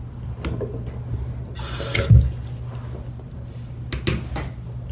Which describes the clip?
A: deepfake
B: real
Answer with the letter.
B